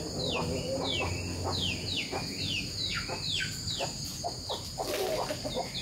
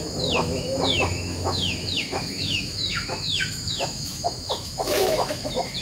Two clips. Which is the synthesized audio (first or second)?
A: second